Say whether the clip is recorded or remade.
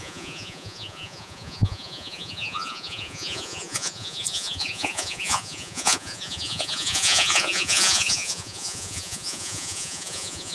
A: remade